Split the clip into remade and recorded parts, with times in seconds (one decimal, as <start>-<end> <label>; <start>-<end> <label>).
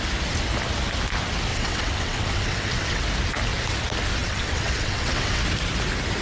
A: 0.0-1.5 recorded; 1.5-3.0 remade; 3.0-4.2 recorded; 4.2-5.4 remade; 5.4-6.2 recorded